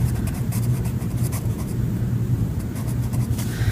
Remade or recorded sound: remade